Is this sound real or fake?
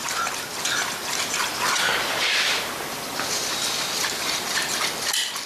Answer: real